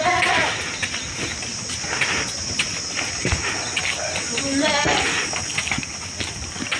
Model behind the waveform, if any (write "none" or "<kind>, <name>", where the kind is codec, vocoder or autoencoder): none